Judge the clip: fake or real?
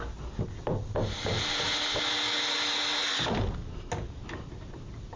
real